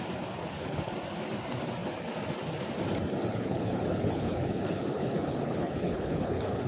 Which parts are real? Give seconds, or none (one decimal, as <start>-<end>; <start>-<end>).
0.0-0.4; 0.9-3.3